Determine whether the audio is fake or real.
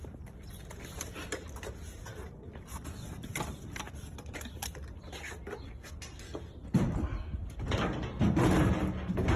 real